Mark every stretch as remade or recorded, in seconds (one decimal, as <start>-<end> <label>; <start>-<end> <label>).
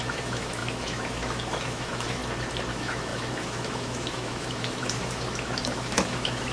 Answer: 0.0-2.2 remade; 2.2-2.7 recorded; 2.7-6.5 remade